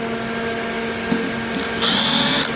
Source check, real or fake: real